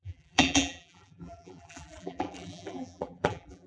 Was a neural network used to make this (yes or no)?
yes